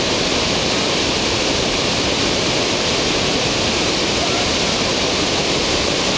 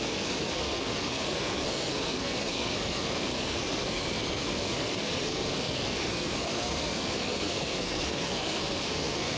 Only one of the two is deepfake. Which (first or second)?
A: second